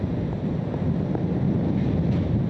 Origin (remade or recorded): recorded